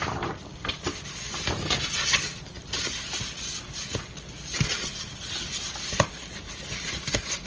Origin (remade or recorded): recorded